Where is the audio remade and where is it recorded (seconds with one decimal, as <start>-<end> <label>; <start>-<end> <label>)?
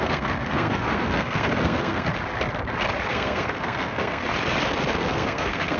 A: 0.0-2.1 remade; 2.1-3.1 recorded; 3.1-4.2 remade; 4.2-4.9 recorded; 4.9-5.8 remade